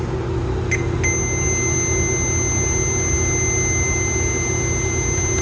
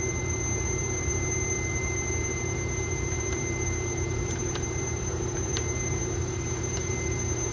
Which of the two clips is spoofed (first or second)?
second